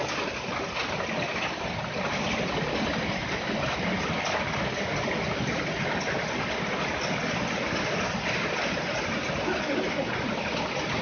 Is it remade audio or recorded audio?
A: recorded